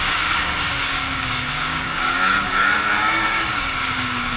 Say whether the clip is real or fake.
fake